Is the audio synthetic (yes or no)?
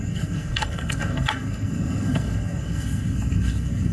yes